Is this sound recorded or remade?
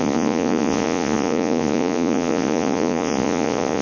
remade